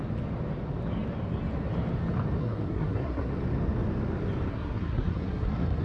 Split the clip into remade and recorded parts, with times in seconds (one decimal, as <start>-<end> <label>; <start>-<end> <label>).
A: 0.0-2.4 recorded; 2.4-3.3 remade; 3.3-4.5 recorded; 4.5-5.8 remade